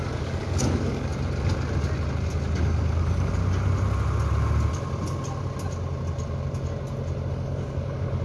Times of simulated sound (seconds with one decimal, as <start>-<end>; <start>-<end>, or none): 0.0-1.1; 2.6-3.4; 7.3-8.2